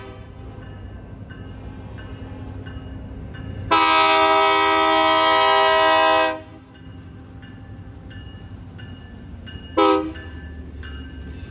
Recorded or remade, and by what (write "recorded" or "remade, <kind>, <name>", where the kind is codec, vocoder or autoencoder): recorded